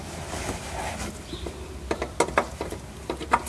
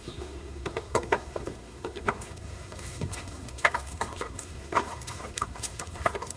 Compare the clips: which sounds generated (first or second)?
second